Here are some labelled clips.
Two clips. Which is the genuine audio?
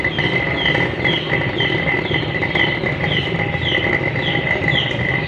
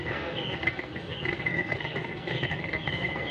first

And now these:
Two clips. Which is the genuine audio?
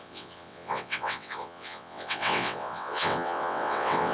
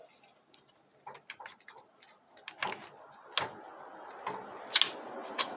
second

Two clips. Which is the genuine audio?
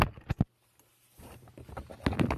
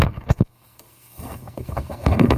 first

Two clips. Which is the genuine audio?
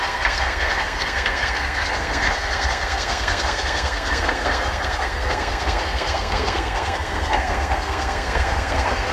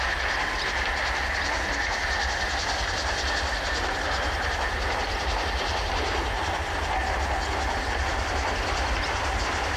second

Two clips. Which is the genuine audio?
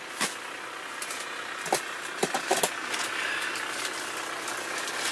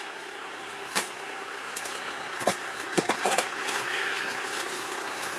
first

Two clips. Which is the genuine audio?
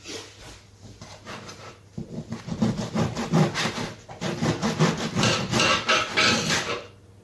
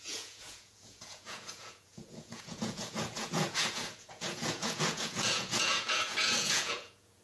first